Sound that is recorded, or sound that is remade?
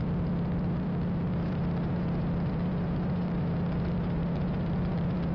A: remade